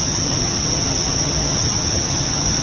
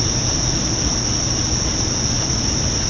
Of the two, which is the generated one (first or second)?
first